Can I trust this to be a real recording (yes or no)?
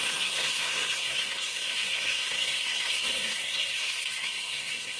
no